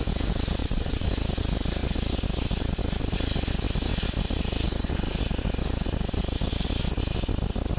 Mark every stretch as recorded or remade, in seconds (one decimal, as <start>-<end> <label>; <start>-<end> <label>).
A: 0.0-0.6 recorded; 0.6-1.1 remade; 1.1-7.8 recorded